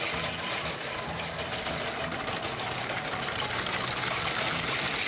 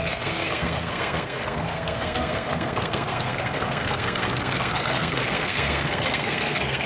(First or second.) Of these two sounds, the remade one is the second